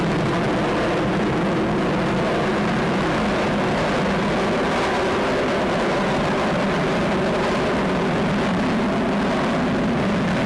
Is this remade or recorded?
recorded